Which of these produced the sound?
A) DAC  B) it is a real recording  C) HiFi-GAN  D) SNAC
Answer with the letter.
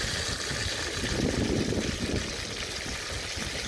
B